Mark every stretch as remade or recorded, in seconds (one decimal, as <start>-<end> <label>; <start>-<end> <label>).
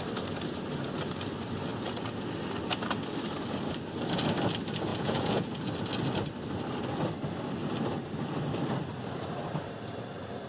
0.0-4.9 recorded; 4.9-5.6 remade; 5.6-10.5 recorded